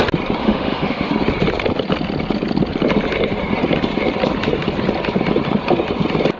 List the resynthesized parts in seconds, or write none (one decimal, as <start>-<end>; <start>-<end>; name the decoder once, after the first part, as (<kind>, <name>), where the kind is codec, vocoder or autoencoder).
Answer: 0.4-1.1 (autoencoder, DAC-VAE)